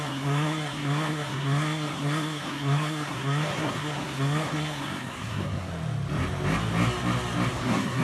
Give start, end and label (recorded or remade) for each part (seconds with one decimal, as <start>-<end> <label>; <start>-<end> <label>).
0.0-5.7 remade; 5.7-7.5 recorded; 7.5-8.0 remade